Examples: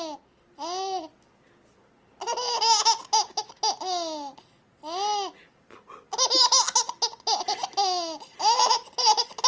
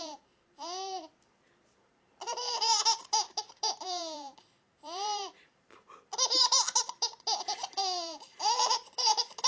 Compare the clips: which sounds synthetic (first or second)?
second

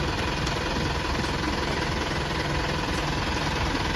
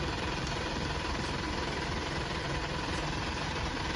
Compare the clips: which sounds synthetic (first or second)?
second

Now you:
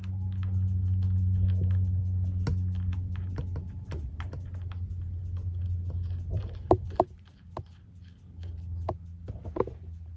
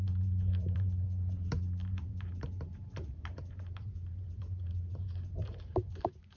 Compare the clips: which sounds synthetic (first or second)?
second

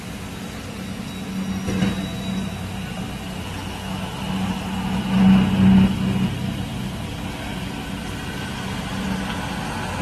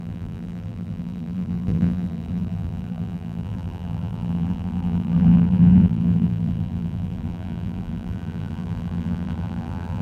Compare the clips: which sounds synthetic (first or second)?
second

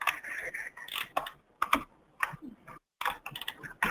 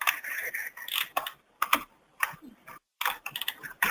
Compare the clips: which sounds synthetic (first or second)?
second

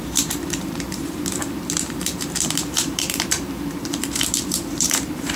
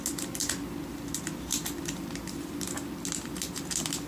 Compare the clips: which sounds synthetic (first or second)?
first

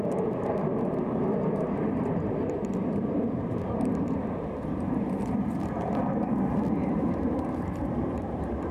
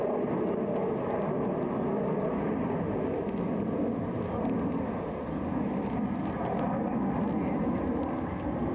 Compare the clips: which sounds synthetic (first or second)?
first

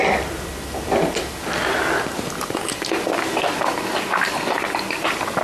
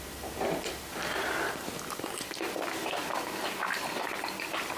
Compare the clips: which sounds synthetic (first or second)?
second